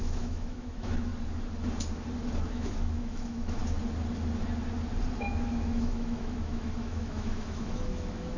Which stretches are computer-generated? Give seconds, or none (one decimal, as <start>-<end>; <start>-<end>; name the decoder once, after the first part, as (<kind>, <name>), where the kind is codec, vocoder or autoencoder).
0.0-1.1 (autoencoder, DAC-VAE); 2.5-3.6; 5.3-8.4